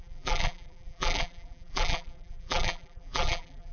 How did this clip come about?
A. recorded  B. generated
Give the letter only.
B